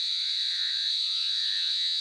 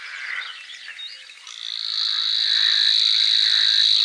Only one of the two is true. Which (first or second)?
second